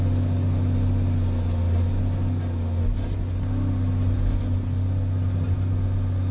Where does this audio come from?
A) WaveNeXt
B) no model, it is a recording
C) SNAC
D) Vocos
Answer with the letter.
B